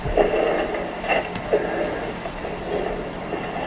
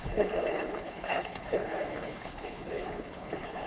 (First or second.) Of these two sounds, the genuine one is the first